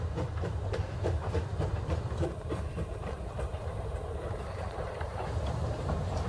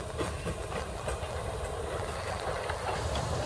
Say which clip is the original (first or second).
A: second